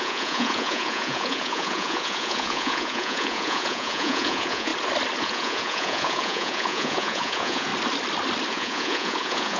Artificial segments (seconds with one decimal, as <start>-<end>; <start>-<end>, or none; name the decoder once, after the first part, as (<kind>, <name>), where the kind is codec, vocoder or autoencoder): 0.0-4.7 (vocoder, Vocos); 5.2-7.7; 8.5-9.6